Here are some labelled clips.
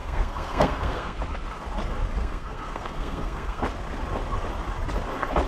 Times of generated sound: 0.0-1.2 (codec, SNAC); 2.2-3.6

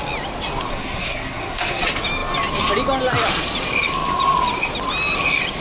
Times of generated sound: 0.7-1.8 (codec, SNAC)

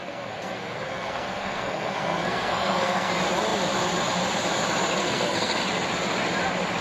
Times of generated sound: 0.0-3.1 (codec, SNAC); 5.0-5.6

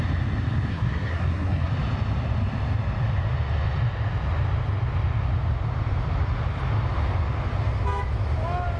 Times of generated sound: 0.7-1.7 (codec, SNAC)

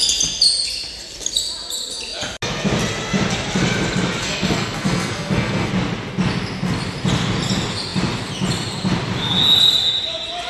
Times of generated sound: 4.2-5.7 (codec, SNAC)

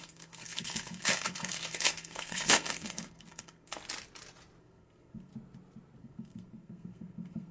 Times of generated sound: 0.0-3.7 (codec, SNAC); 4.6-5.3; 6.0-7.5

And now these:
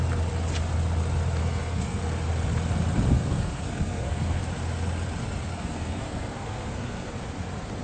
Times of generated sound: 1.4-2.0 (codec, SNAC); 3.1-4.4; 5.5-7.1